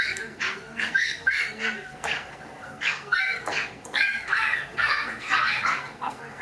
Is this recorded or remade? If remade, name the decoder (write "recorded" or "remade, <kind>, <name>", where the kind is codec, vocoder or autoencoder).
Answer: remade, codec, SNAC